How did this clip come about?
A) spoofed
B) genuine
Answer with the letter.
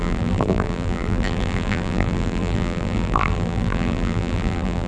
A